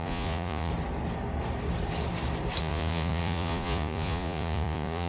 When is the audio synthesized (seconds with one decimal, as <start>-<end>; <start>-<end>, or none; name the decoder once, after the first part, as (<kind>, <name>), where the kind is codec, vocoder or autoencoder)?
0.0-0.7 (vocoder, Vocos); 2.6-5.1